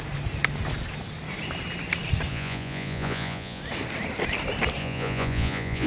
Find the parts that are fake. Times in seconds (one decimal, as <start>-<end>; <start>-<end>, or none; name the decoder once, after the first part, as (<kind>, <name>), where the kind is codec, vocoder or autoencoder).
2.3-3.6 (vocoder, Vocos); 4.8-5.9